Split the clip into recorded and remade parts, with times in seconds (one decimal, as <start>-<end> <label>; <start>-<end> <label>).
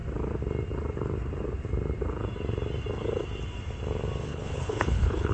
0.0-4.3 recorded; 4.3-5.3 remade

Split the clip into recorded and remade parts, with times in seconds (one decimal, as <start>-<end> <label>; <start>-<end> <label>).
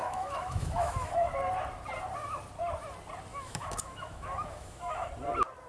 0.0-1.3 remade; 1.3-3.3 recorded; 3.3-5.1 remade; 5.1-5.7 recorded